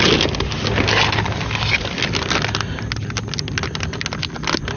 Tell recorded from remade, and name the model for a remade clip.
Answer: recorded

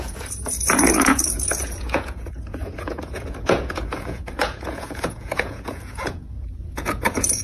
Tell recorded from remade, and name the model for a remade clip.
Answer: remade, vocoder, Vocos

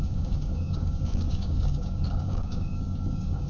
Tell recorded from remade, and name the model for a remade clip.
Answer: remade, codec, DAC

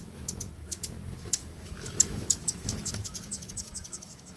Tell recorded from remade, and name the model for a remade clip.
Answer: remade, autoencoder, DAC-VAE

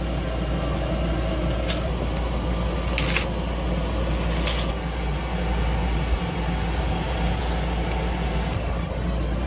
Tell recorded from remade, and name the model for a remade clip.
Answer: recorded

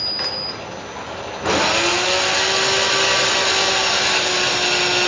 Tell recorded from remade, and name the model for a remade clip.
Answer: recorded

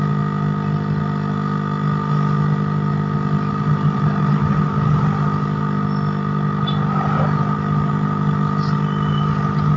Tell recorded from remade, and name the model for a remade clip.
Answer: recorded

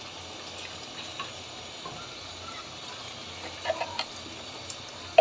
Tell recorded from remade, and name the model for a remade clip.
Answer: recorded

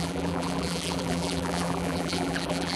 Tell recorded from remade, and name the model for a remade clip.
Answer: remade, vocoder, BigVGAN v2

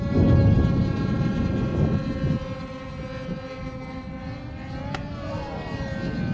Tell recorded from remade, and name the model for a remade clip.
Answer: recorded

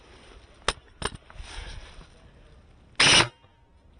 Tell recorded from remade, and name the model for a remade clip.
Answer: recorded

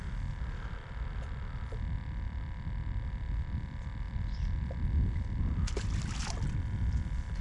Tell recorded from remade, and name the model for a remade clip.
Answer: recorded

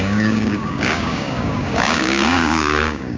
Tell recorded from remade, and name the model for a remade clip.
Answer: remade, codec, DAC